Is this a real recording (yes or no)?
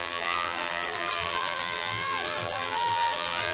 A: no